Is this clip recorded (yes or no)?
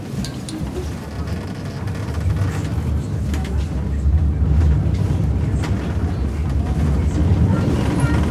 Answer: yes